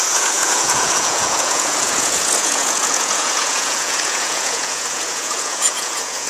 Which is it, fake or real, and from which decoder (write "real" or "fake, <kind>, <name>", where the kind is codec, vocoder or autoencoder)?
fake, vocoder, Vocos